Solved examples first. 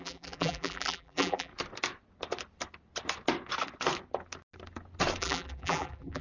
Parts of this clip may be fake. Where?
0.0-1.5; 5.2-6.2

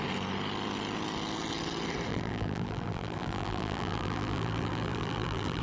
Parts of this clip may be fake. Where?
2.1-5.6

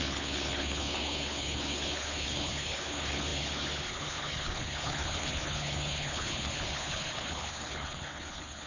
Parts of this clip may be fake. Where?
0.0-8.7

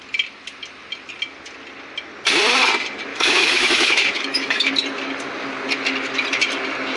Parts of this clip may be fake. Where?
3.1-4.7